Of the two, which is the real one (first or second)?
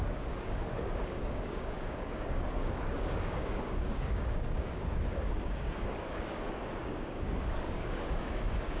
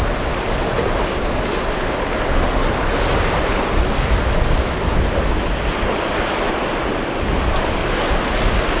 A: second